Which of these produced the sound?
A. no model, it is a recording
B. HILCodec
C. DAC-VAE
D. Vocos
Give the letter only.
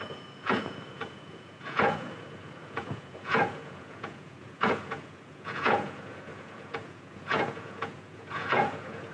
D